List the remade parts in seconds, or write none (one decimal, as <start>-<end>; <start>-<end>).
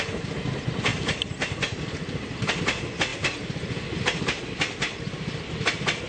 0.9-2.6